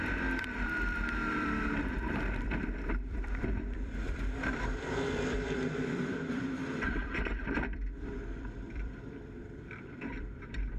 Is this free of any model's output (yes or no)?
no